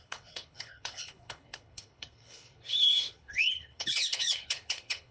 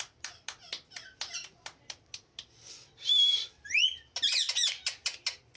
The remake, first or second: first